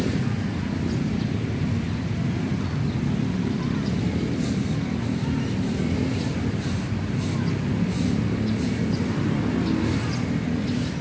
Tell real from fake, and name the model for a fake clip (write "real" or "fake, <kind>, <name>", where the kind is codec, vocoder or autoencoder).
real